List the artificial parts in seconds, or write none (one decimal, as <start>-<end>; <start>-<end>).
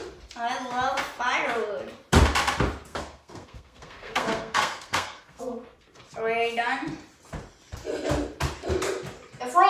2.9-6.0